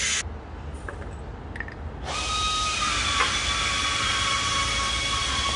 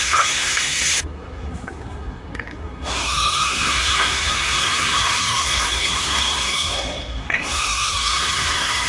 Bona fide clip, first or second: first